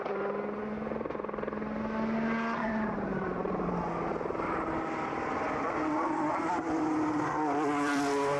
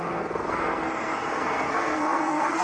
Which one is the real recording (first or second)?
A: first